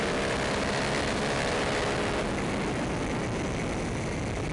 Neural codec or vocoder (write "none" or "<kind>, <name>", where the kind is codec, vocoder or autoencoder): none